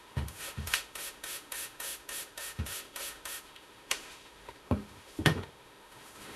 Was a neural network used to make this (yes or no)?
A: yes